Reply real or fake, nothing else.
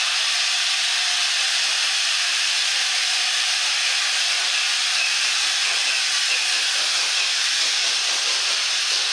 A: real